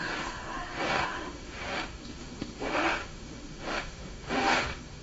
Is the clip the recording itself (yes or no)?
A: no